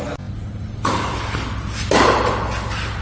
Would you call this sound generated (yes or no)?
no